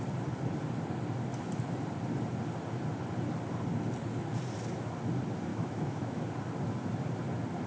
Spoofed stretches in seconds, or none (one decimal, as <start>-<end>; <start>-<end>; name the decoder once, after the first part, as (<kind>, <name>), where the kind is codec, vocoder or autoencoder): 5.5-6.2 (autoencoder, DAC-VAE)